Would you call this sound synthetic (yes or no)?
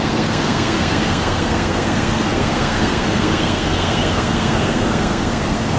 yes